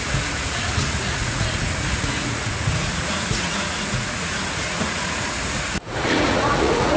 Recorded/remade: remade